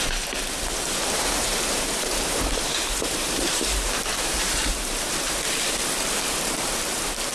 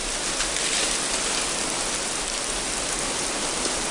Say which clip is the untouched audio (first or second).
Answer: second